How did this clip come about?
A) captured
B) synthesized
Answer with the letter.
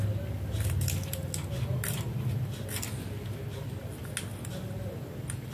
A